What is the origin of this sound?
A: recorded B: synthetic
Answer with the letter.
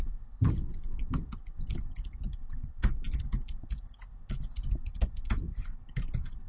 A